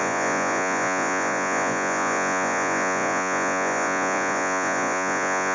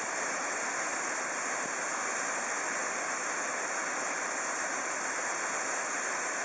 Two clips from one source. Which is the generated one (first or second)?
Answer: first